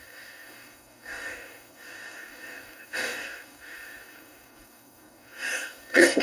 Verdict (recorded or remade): remade